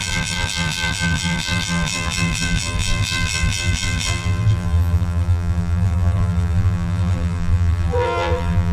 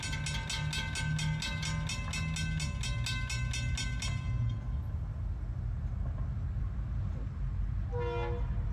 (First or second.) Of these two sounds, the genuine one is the second